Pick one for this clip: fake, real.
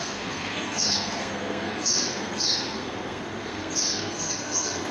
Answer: fake